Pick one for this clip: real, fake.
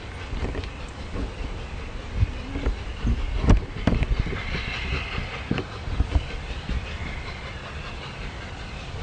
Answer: real